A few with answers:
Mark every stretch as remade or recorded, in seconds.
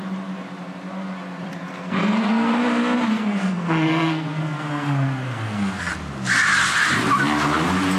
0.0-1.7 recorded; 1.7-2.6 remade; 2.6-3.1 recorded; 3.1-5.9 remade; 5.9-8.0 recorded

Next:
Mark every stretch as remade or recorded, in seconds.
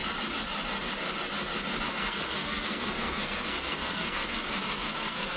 0.0-1.9 recorded; 1.9-5.4 remade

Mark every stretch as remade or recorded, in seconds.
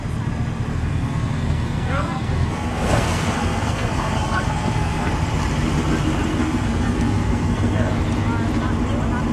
0.0-0.7 recorded; 0.7-5.1 remade; 5.1-6.3 recorded; 6.3-7.9 remade; 7.9-9.3 recorded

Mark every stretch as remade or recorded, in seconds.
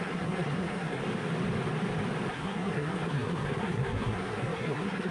0.0-1.0 remade; 1.0-2.3 recorded; 2.3-5.1 remade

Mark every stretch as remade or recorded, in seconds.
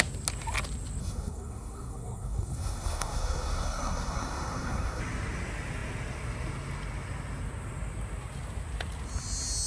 0.0-1.0 recorded; 1.0-5.0 remade; 5.0-9.7 recorded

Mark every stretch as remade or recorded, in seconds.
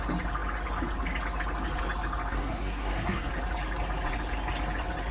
0.0-2.3 recorded; 2.3-3.3 remade; 3.3-5.1 recorded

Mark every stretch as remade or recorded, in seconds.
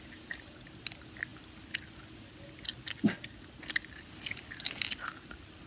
0.0-5.7 recorded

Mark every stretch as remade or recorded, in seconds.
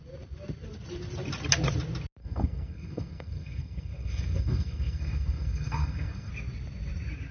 0.0-2.2 recorded; 2.2-6.3 remade; 6.3-7.3 recorded